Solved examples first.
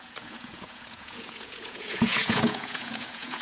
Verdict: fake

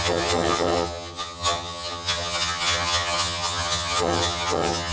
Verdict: fake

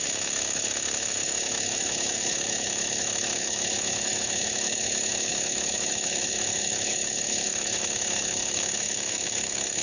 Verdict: fake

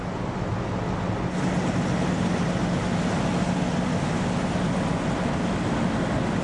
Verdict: real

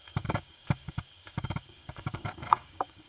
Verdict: fake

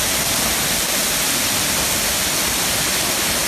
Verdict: real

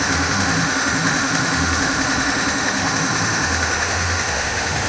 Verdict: fake